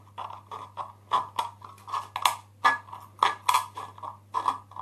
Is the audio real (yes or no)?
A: yes